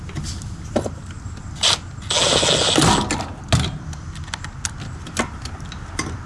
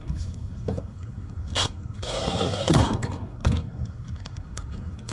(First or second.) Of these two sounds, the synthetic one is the second